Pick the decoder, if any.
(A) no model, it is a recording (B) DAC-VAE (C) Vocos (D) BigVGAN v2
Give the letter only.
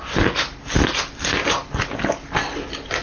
A